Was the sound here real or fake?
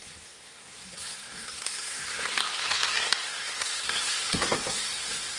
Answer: fake